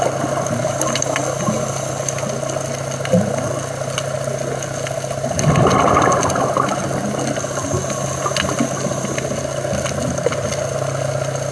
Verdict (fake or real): real